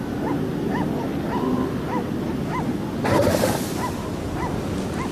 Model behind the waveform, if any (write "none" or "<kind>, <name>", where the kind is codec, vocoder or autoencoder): none